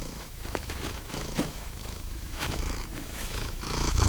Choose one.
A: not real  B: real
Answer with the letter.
A